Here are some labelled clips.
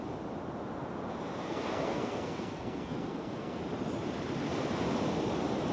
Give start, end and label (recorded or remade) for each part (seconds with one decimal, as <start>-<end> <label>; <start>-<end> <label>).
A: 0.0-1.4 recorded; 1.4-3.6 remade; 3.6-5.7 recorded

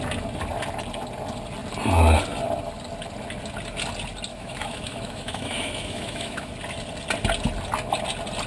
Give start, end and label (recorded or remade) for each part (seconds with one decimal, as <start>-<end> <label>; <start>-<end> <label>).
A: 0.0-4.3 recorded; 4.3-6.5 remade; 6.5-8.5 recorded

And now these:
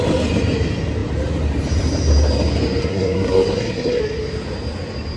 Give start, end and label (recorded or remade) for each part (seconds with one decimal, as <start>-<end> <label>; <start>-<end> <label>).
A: 0.0-2.8 recorded; 2.8-4.0 remade; 4.0-5.2 recorded

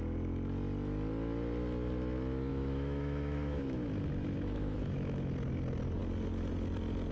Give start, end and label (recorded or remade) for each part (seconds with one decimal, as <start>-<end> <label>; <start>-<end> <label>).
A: 0.0-2.5 recorded; 2.5-5.3 remade; 5.3-7.1 recorded

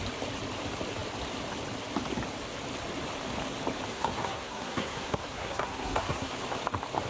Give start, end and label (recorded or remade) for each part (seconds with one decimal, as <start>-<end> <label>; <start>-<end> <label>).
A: 0.0-3.9 recorded; 3.9-6.3 remade; 6.3-7.1 recorded